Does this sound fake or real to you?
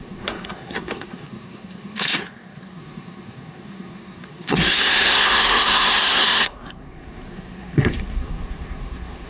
fake